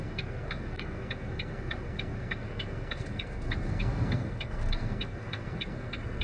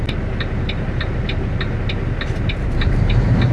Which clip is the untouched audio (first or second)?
second